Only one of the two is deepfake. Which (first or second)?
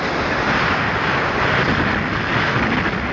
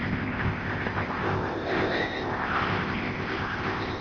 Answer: second